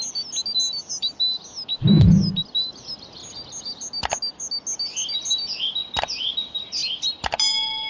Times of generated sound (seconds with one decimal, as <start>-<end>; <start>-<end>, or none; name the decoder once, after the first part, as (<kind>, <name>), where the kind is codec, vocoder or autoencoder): none

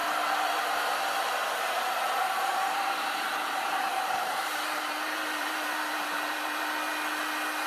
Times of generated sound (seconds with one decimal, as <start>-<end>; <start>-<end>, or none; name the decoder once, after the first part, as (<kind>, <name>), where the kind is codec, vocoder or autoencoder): 0.0-1.3 (vocoder, BigVGAN v2); 2.0-6.6

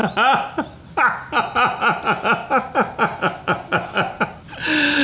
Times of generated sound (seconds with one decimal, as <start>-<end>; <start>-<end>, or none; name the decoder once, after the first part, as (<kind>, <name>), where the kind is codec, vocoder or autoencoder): none